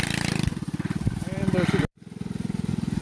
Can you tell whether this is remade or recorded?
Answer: remade